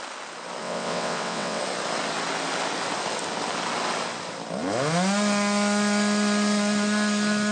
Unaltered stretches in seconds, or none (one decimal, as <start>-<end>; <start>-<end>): 0.0-0.6; 1.6-7.5

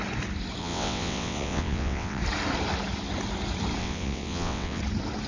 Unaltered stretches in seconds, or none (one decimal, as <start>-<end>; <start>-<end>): 0.0-0.6; 2.2-3.8; 4.8-5.3

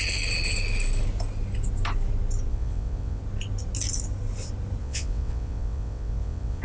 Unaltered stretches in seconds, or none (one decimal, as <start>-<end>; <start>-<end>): 0.0-2.5; 3.2-4.8

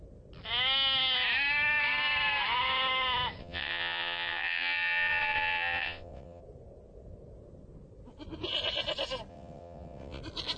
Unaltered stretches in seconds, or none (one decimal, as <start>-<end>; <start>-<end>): 0.0-3.4; 6.4-9.3; 10.2-10.6

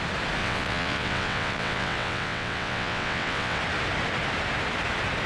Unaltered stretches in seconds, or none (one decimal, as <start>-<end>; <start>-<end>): 0.0-0.4; 3.6-5.3

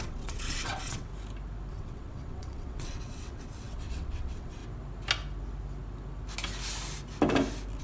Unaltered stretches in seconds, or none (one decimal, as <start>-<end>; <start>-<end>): 1.1-1.7; 4.6-7.8

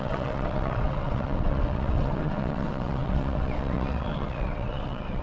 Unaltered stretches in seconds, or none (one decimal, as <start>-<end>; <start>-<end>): none